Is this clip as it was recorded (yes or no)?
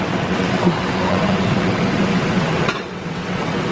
no